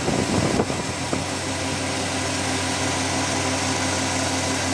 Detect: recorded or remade recorded